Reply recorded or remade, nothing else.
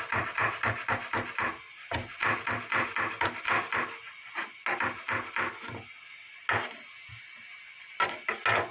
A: recorded